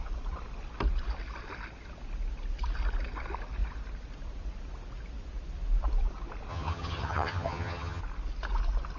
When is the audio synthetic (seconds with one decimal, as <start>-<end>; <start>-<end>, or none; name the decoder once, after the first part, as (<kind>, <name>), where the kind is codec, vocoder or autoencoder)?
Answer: 6.5-8.0 (vocoder, HiFi-GAN)